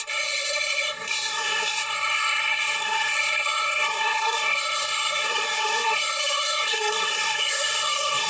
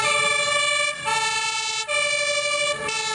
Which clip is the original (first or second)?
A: second